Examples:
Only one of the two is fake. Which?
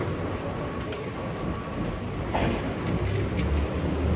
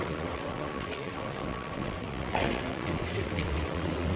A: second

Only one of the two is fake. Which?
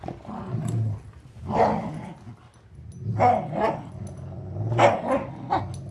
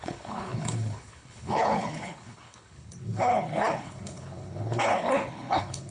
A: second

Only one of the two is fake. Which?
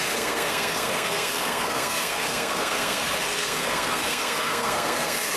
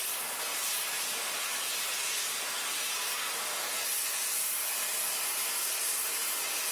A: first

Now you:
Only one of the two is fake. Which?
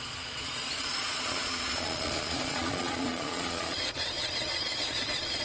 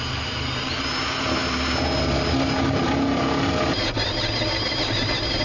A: first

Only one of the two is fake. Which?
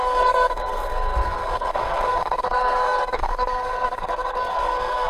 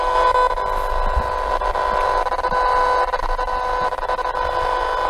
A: first